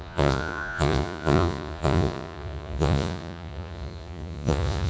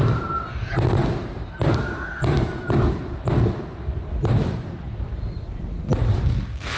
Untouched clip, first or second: second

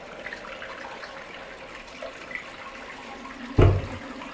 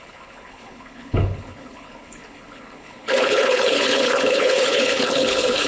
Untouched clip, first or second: first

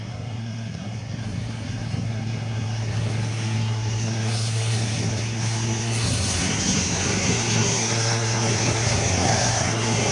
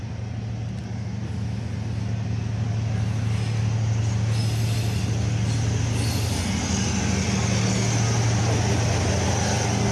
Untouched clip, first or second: second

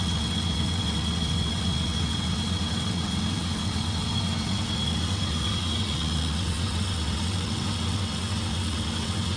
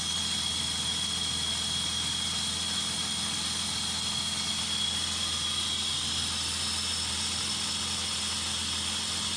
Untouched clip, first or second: second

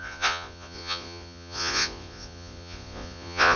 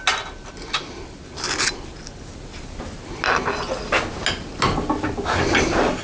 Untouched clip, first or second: second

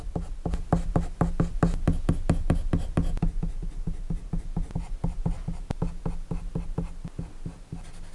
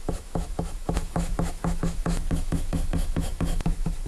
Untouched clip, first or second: first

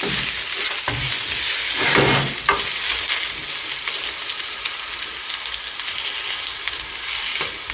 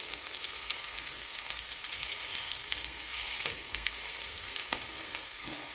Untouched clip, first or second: first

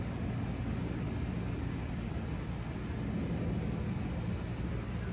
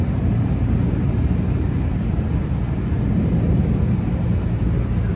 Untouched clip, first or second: first